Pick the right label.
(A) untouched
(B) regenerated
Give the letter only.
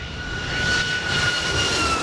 B